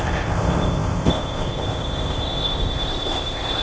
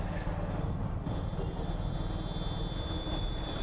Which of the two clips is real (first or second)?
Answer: second